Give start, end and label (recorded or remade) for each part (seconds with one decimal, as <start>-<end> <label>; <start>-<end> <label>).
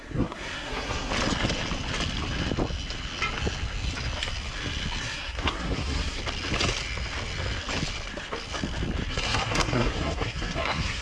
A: 0.0-1.1 remade; 1.1-5.0 recorded; 5.0-6.2 remade; 6.2-9.1 recorded; 9.1-11.0 remade